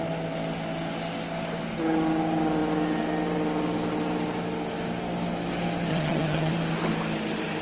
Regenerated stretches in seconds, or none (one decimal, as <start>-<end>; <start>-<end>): 5.9-6.5